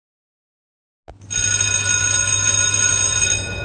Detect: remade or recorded recorded